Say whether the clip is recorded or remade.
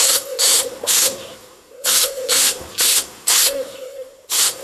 remade